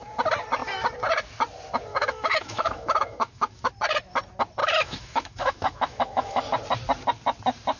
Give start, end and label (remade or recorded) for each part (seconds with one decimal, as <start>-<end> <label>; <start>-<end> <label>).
0.0-1.9 recorded; 1.9-3.7 remade; 3.7-4.6 recorded; 4.6-6.4 remade; 6.4-7.8 recorded